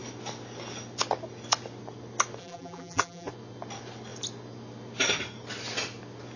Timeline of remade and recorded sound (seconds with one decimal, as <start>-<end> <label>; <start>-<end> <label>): 0.0-2.4 recorded; 2.4-3.3 remade; 3.3-6.4 recorded